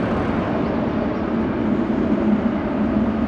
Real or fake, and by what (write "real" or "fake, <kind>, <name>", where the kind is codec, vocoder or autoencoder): real